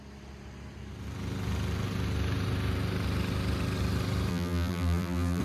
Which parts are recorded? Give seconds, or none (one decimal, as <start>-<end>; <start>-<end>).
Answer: 0.0-4.3